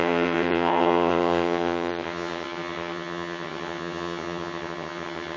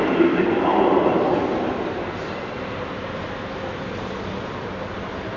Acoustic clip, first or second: second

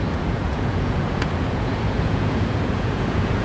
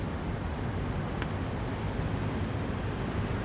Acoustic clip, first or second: second